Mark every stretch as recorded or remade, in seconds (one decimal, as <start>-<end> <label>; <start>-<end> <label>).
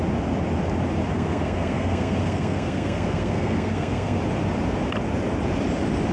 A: 0.0-1.1 recorded; 1.1-4.2 remade; 4.2-6.1 recorded